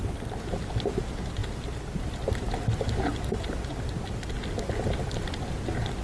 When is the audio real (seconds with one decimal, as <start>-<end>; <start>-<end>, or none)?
0.0-6.0